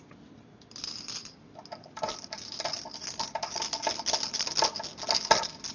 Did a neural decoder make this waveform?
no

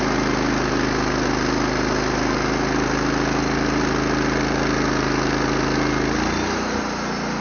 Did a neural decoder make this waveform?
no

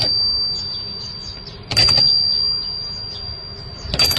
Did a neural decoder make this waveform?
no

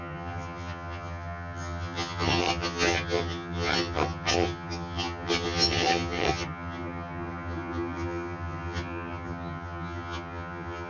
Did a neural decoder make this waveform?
yes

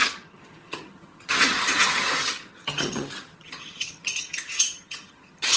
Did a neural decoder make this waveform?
yes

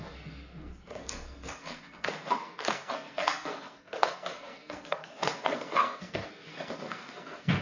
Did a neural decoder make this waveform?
yes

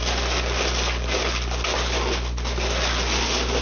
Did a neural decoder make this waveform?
no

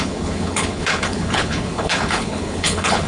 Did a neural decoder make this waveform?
yes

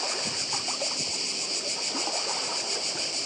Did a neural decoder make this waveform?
no